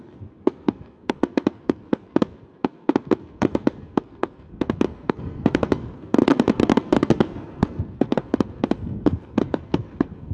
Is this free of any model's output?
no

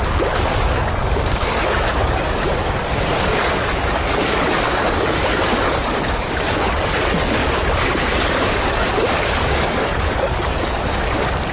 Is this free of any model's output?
no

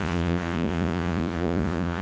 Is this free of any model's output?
no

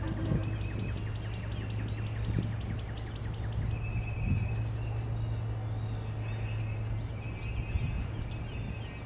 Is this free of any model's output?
yes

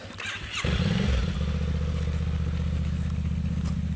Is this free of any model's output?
yes